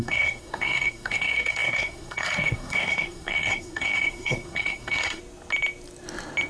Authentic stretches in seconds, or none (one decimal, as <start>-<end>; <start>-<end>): 5.2-6.5